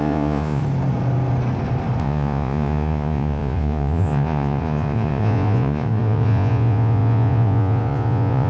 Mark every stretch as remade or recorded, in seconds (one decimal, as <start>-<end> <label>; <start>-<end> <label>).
0.0-0.6 remade; 0.6-2.0 recorded; 2.0-8.5 remade